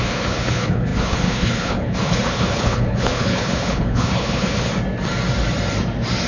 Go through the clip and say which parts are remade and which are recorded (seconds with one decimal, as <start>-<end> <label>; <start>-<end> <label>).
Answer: 0.0-4.7 remade; 4.7-6.3 recorded